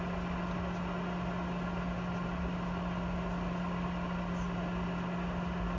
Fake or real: real